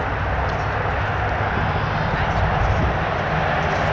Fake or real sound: real